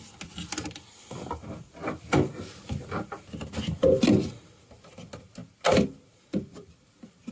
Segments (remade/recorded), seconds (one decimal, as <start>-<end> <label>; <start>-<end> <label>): 0.0-7.3 recorded